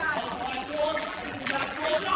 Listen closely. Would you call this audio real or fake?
fake